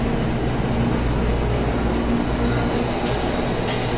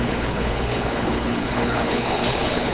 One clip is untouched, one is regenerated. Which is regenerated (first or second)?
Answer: second